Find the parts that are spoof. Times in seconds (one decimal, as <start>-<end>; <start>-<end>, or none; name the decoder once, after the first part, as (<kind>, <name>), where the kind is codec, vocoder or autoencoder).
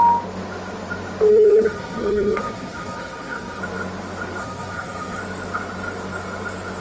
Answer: 1.3-3.6 (codec, SNAC); 4.4-5.2